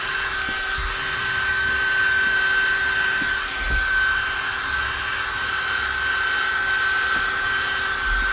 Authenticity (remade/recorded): recorded